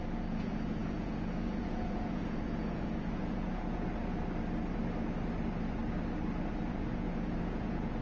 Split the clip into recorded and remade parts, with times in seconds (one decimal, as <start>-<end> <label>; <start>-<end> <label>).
0.0-3.9 remade; 3.9-6.7 recorded; 6.7-8.0 remade

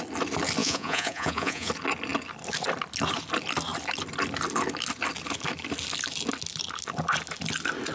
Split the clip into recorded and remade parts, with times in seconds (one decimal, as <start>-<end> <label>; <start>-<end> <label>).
0.0-0.6 recorded; 0.6-1.7 remade; 1.7-7.9 recorded

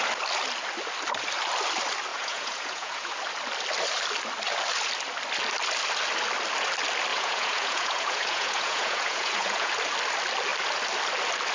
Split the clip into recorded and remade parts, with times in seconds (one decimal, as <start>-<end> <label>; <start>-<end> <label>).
0.0-2.1 recorded; 2.1-3.1 remade; 3.1-7.1 recorded; 7.1-9.7 remade; 9.7-11.5 recorded

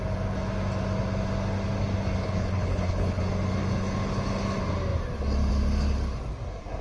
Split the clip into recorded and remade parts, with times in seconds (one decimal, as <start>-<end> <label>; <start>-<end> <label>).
0.0-2.2 recorded; 2.2-3.2 remade; 3.2-6.8 recorded